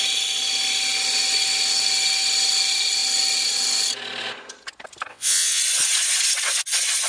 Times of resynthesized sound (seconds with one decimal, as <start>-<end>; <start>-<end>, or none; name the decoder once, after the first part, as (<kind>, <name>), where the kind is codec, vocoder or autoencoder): 5.1-5.6 (vocoder, WaveNeXt)